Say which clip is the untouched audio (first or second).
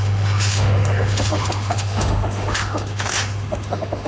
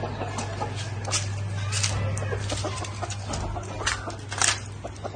second